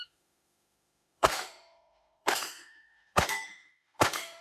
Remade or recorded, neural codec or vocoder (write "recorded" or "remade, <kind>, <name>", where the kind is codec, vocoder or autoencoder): remade, autoencoder, DAC-VAE